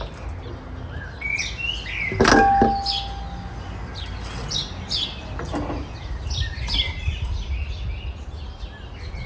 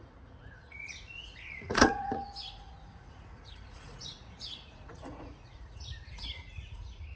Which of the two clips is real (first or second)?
first